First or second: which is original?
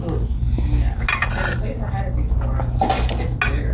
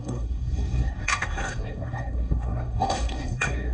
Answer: first